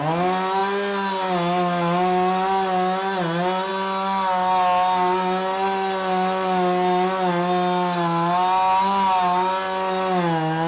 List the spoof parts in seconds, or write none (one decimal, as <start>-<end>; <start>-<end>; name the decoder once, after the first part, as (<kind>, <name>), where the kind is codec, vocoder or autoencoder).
none